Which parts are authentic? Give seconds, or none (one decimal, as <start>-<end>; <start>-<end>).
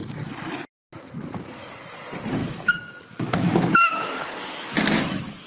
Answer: 0.0-2.4